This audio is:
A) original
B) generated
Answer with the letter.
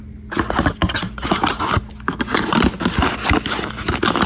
A